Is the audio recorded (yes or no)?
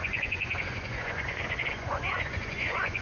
no